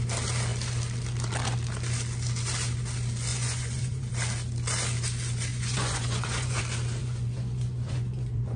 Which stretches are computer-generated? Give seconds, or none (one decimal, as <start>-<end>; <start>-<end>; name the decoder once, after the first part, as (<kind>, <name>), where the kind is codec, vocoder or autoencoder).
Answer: 3.3-4.1 (vocoder, Vocos); 5.5-6.6; 7.0-8.6